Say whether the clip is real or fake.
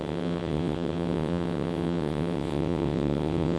fake